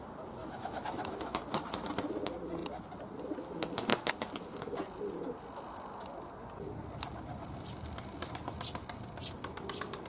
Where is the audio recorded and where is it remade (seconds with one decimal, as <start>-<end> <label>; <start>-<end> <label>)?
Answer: 0.0-0.4 recorded; 0.4-1.4 remade; 1.4-10.1 recorded